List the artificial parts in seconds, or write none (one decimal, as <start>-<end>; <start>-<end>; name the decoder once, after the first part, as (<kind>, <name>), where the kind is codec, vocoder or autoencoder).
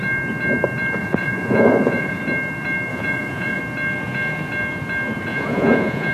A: 1.0-2.2 (vocoder, Vocos); 2.9-3.6; 5.3-6.1